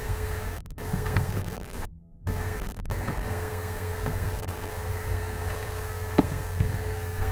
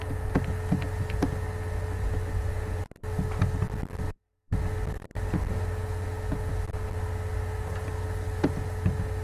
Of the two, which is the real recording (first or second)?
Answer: second